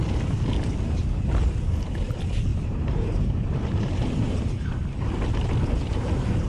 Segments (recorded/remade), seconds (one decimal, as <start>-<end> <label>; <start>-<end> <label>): 0.0-2.5 recorded; 2.5-4.1 remade; 4.1-6.5 recorded